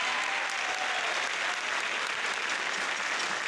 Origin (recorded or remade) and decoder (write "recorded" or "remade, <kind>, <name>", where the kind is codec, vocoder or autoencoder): recorded